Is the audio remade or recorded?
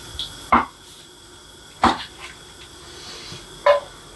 recorded